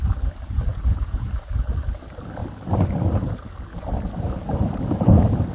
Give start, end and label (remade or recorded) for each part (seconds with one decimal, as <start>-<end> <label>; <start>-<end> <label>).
0.0-0.7 recorded; 0.7-1.3 remade; 1.3-5.5 recorded